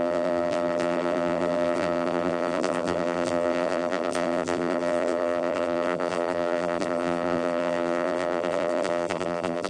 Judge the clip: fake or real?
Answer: fake